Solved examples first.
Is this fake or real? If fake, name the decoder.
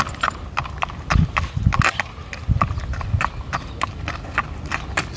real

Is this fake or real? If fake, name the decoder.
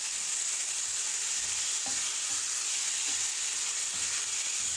real